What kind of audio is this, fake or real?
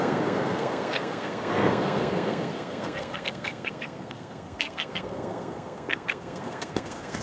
fake